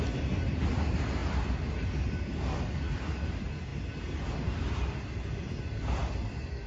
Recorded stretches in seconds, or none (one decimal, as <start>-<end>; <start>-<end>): 0.0-6.7